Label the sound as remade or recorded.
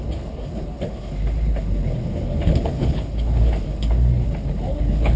remade